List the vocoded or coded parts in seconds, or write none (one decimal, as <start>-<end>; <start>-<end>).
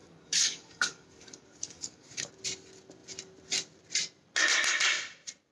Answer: 0.0-2.3